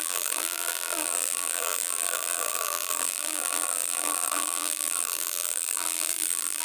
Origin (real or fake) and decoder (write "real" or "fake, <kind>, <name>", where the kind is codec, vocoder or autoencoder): fake, vocoder, BigVGAN v2